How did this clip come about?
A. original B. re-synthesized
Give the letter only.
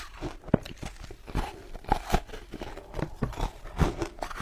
A